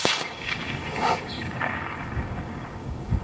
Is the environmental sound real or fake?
fake